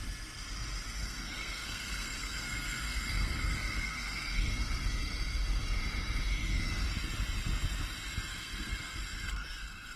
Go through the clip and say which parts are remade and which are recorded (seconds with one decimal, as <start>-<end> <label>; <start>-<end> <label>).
0.0-1.0 recorded; 1.0-4.5 remade; 4.5-8.3 recorded; 8.3-9.0 remade; 9.0-10.0 recorded

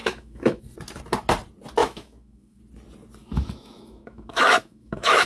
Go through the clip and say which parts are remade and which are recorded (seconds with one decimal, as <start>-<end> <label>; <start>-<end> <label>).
0.0-0.6 remade; 0.6-1.8 recorded; 1.8-2.6 remade; 2.6-3.2 recorded; 3.2-5.3 remade

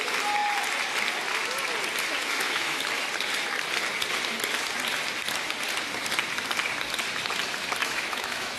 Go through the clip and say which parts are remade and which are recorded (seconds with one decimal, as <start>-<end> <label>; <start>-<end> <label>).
0.0-2.2 recorded; 2.2-2.8 remade; 2.8-7.8 recorded; 7.8-8.6 remade

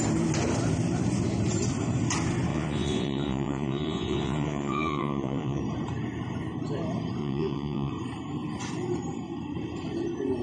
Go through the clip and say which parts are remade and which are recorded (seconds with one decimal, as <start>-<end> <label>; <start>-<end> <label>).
0.0-2.5 recorded; 2.5-5.6 remade; 5.6-7.2 recorded; 7.2-7.9 remade; 7.9-10.4 recorded

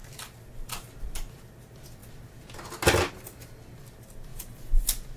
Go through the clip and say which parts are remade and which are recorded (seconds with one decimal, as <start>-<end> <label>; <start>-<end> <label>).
0.0-5.2 recorded

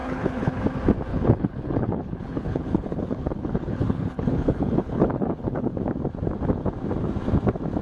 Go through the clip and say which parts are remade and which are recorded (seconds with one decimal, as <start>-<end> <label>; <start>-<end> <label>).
0.0-0.6 remade; 0.6-1.1 recorded; 1.1-5.8 remade; 5.8-7.8 recorded

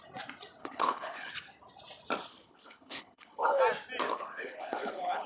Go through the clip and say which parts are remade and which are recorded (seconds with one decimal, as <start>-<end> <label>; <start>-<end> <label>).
0.0-0.6 recorded; 0.6-1.3 remade; 1.3-2.3 recorded; 2.3-3.6 remade; 3.6-4.1 recorded; 4.1-5.3 remade

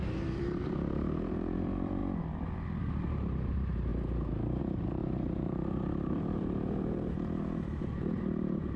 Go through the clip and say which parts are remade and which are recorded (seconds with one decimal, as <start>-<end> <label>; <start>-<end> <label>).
0.0-2.0 remade; 2.0-2.8 recorded; 2.8-3.9 remade; 3.9-4.6 recorded; 4.6-8.8 remade